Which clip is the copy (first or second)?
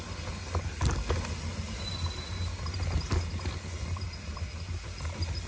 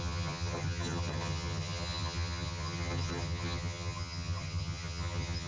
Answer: second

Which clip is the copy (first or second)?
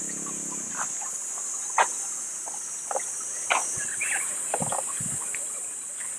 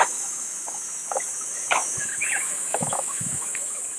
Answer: second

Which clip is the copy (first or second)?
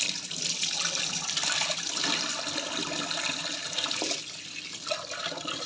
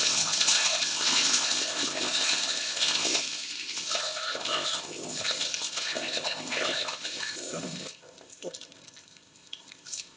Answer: second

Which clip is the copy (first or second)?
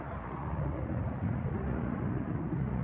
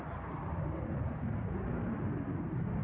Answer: first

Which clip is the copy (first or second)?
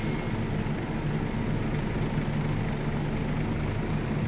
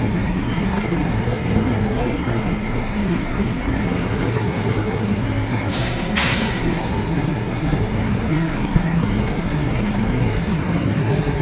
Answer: second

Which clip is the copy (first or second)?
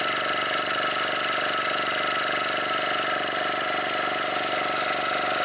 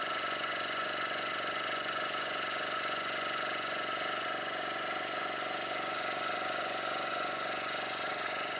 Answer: second